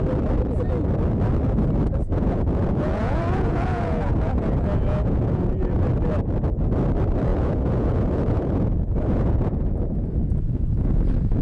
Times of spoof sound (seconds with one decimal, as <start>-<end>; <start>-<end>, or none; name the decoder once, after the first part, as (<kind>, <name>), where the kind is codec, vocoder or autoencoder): 2.1-5.7 (vocoder, Vocos); 7.3-10.9